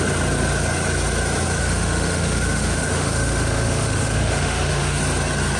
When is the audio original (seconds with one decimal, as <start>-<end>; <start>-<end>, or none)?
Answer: 0.0-1.6; 5.0-5.6